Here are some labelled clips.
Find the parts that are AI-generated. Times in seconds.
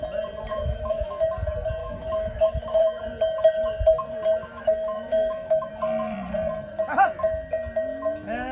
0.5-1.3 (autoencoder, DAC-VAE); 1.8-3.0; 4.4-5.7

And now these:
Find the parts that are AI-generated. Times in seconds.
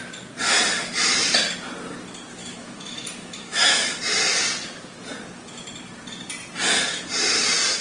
2.4-4.0 (autoencoder, DAC-VAE)